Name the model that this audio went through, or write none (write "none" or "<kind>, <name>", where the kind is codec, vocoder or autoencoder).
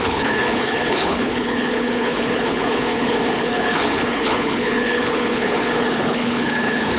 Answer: codec, HILCodec